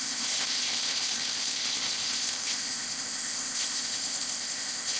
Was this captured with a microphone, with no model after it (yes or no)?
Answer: no